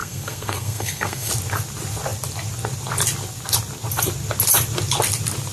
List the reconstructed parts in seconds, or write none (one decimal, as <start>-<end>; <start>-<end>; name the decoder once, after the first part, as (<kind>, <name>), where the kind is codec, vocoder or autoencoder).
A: 0.0-1.3 (codec, SNAC)